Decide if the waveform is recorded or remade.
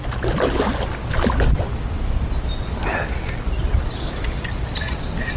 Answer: recorded